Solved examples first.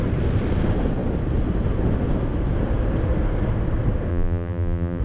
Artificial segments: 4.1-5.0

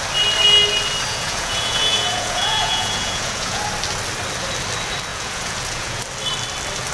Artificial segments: 1.1-3.6; 5.1-6.0

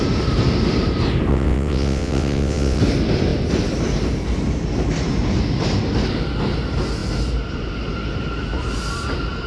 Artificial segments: 1.3-2.8

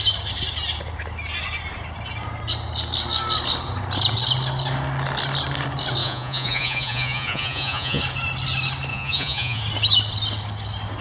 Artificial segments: 6.0-8.0; 8.9-9.6

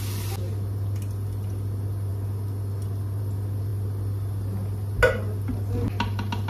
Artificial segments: none

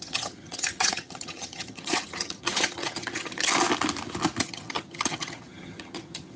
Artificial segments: 0.0-3.5; 4.4-6.4

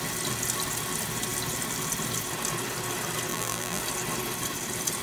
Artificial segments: 3.3-3.8

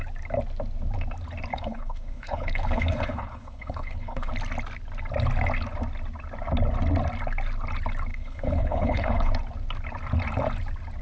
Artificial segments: 1.5-4.3; 8.1-9.3